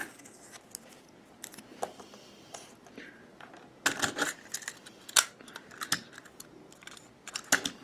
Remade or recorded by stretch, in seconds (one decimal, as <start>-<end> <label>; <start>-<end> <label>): 0.0-7.8 recorded